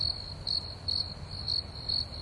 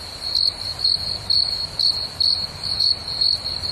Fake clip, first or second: second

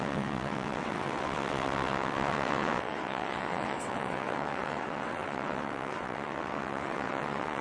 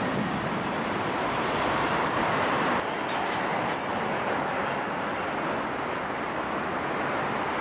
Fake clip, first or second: first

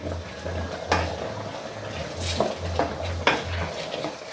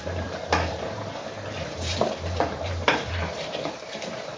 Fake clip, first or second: second